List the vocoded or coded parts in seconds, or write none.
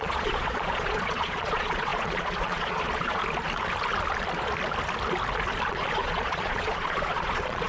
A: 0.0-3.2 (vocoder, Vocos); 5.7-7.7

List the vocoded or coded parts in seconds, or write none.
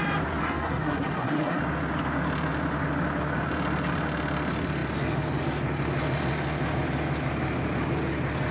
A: 0.4-1.6 (codec, SNAC)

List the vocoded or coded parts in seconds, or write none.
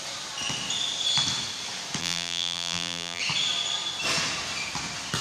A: 2.0-3.2 (vocoder, BigVGAN v2)